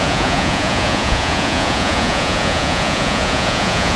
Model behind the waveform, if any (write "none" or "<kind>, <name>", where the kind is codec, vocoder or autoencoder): vocoder, Vocos